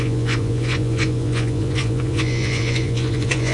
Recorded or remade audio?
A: remade